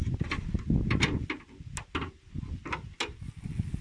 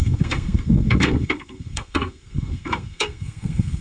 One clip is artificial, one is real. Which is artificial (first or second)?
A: second